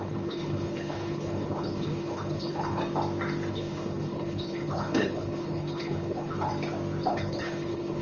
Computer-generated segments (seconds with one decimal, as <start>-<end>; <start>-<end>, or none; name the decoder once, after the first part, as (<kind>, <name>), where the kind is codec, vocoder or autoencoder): 0.0-2.8 (codec, HILCodec); 3.5-6.5; 7.1-8.0